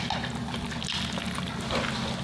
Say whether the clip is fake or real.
real